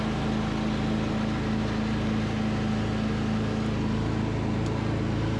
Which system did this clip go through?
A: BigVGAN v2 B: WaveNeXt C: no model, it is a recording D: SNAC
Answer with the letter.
C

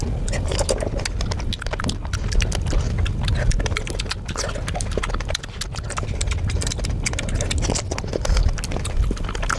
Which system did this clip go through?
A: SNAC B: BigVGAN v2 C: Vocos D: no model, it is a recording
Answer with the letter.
D